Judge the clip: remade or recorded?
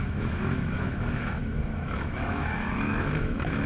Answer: remade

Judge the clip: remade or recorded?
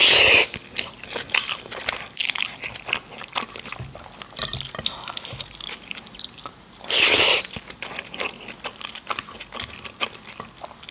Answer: recorded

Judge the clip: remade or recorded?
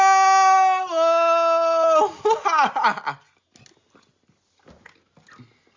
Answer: recorded